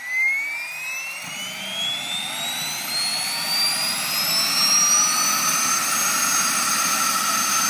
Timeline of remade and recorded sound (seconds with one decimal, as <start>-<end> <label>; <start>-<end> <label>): 0.0-7.7 recorded